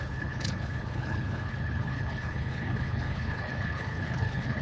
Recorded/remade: remade